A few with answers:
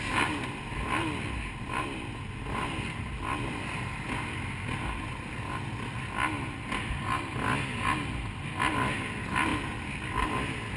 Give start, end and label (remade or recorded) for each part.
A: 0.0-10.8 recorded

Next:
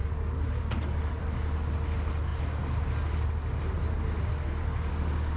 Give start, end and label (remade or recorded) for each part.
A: 0.0-1.2 remade; 1.2-5.4 recorded

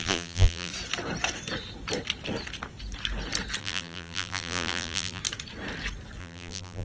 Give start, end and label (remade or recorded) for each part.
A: 0.0-0.7 remade; 0.7-3.6 recorded; 3.6-5.2 remade; 5.2-6.2 recorded; 6.2-6.8 remade

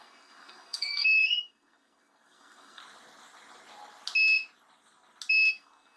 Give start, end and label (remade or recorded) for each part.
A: 0.0-2.8 remade; 2.8-5.5 recorded; 5.5-6.0 remade

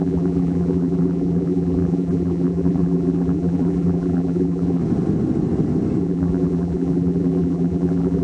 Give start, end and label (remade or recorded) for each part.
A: 0.0-4.8 remade; 4.8-6.0 recorded; 6.0-8.2 remade

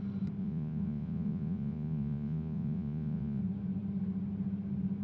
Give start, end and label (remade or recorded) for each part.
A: 0.0-0.4 recorded; 0.4-3.4 remade; 3.4-5.0 recorded

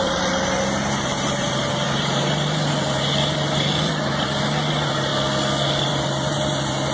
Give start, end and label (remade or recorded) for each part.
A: 0.0-5.1 remade; 5.1-5.8 recorded; 5.8-6.9 remade